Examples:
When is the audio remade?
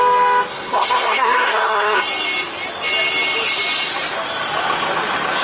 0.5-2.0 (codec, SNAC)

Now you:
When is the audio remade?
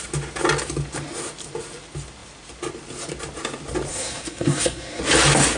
3.9-5.0 (codec, SNAC)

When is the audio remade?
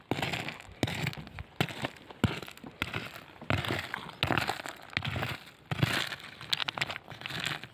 none